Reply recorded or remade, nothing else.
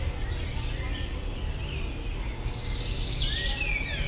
recorded